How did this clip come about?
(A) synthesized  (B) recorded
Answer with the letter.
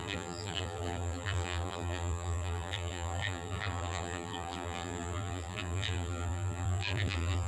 A